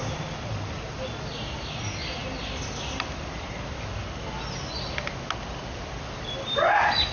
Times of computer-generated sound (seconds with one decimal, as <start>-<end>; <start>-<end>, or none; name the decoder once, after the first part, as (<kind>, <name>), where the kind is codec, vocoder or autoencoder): none